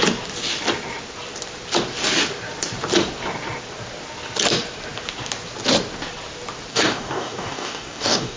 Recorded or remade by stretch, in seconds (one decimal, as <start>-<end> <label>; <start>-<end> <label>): 0.0-6.7 recorded; 6.7-8.4 remade